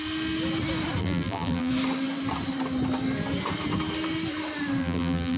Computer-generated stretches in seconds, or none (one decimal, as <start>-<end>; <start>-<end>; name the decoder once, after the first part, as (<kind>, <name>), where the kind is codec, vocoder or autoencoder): 1.0-1.7 (vocoder, BigVGAN v2); 4.8-5.4